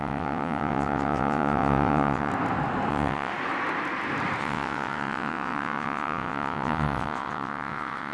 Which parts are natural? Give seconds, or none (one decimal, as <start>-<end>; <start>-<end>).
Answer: 2.3-2.9; 3.3-4.4